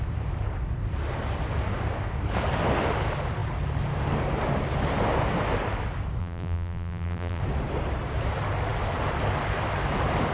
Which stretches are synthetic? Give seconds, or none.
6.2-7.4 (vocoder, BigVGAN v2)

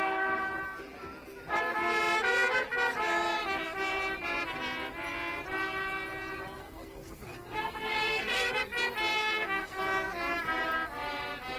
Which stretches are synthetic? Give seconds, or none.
6.6-8.6 (codec, SNAC); 9.1-9.8

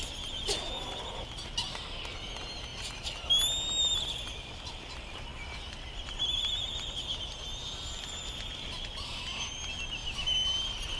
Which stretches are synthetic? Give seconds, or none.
none

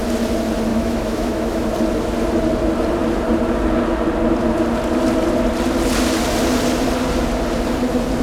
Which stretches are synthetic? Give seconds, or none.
0.7-1.6 (autoencoder, DAC-VAE)

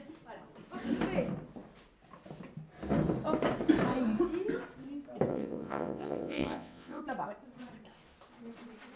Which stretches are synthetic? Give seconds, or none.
5.3-7.0 (vocoder, WaveNeXt)

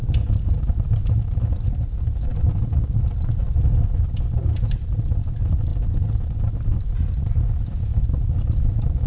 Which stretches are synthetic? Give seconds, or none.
none